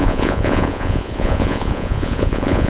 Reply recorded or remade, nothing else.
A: remade